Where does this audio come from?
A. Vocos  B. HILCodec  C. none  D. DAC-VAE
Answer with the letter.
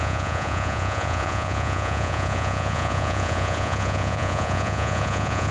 A